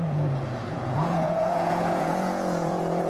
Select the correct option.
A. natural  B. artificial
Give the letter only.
B